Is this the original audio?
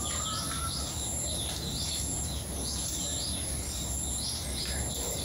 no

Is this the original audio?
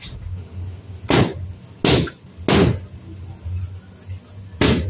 yes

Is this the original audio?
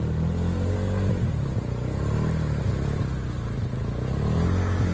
yes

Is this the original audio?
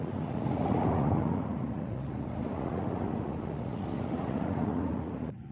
no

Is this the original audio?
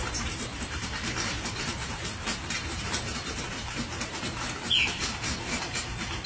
no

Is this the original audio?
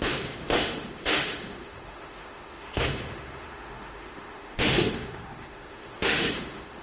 no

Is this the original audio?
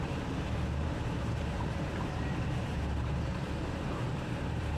no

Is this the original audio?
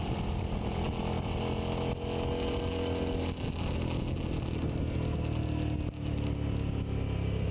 yes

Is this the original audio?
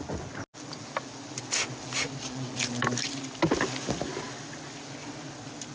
yes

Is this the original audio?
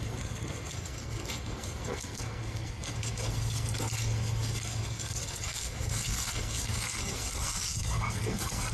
no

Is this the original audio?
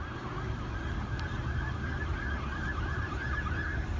yes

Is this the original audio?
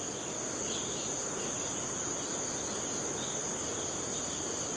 yes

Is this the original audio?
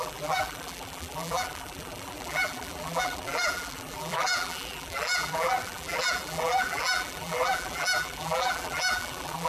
no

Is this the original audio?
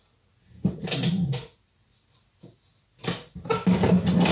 yes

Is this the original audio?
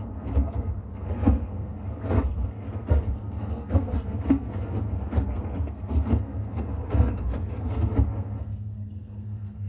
no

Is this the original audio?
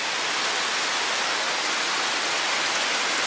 yes